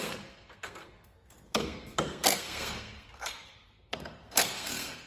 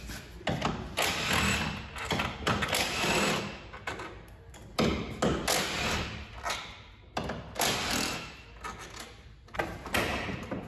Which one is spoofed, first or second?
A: first